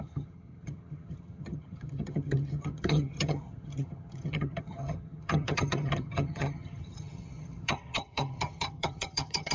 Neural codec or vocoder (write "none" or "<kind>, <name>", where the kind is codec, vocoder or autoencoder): vocoder, HiFi-GAN